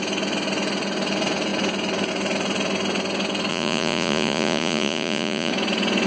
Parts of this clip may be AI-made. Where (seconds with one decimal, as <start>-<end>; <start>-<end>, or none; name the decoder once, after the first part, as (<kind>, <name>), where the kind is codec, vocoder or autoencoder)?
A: 3.5-5.5 (vocoder, Vocos)